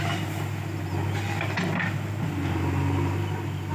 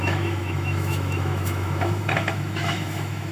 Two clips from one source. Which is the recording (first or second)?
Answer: first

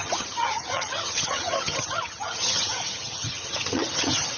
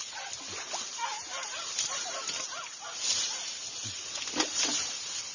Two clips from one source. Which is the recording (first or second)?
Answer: second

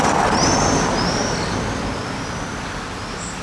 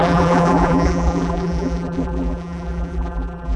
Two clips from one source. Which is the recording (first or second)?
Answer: first